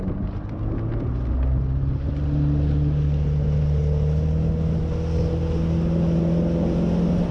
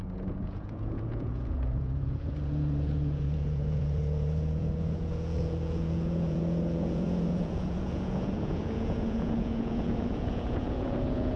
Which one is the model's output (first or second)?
second